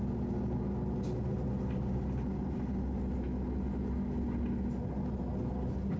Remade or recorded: recorded